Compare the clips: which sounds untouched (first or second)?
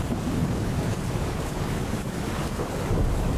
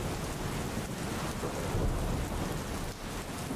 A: second